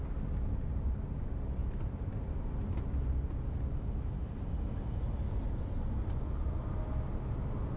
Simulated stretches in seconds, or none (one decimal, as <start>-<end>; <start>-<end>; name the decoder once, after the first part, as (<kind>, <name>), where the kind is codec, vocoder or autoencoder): none